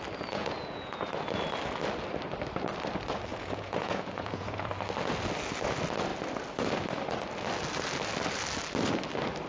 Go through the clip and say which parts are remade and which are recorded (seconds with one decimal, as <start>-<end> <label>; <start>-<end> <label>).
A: 0.0-0.4 recorded; 0.4-1.1 remade; 1.1-3.3 recorded; 3.3-4.7 remade; 4.7-9.5 recorded